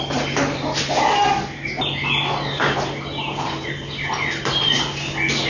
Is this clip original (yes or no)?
yes